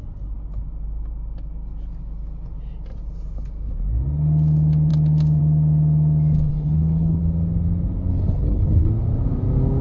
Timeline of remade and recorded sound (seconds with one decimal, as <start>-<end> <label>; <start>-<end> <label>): 0.0-6.5 recorded; 6.5-7.2 remade; 7.2-8.1 recorded; 8.1-8.9 remade; 8.9-9.8 recorded